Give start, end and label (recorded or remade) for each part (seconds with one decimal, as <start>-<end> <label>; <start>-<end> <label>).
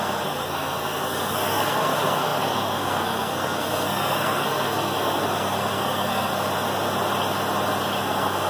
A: 0.0-6.3 remade; 6.3-8.0 recorded; 8.0-8.5 remade